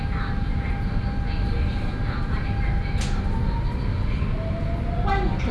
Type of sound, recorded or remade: recorded